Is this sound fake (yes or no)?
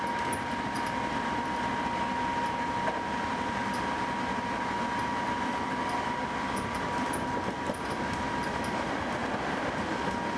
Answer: no